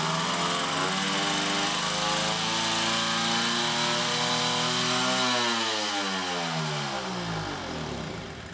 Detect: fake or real real